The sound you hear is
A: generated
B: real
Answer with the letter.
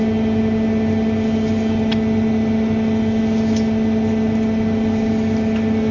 B